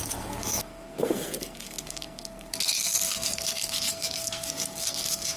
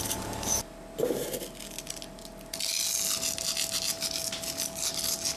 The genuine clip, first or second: second